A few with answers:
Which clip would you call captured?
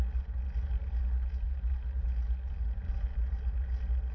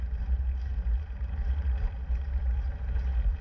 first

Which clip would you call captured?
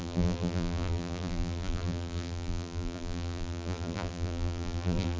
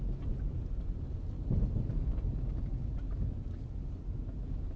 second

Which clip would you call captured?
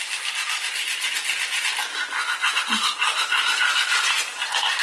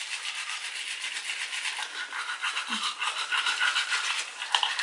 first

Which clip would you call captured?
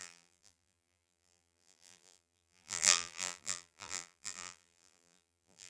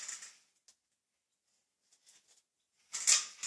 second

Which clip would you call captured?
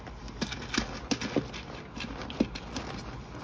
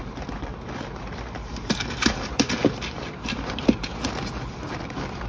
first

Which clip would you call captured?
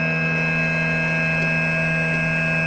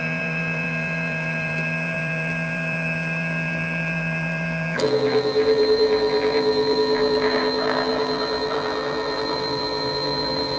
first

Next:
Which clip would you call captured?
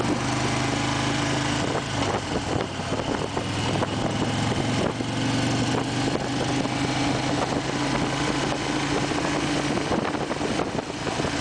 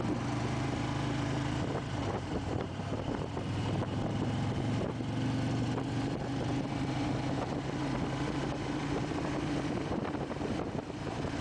first